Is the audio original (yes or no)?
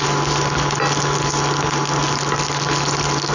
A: yes